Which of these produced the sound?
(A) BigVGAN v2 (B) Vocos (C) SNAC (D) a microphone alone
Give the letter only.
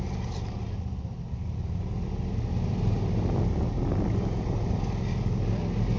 D